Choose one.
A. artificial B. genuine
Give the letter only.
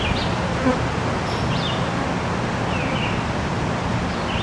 B